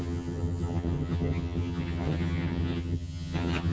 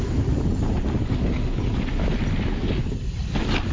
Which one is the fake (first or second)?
first